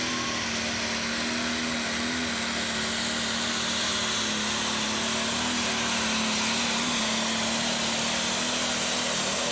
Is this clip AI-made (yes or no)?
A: no